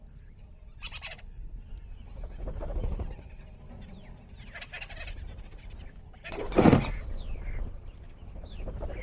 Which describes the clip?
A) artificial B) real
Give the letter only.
A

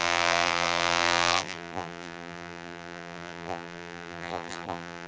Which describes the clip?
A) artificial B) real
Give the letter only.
A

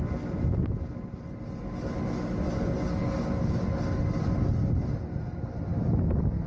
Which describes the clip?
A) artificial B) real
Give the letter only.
B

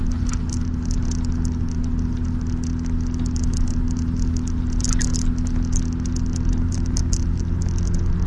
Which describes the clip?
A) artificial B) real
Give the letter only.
B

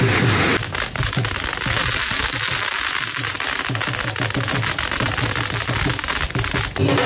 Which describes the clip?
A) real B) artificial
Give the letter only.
A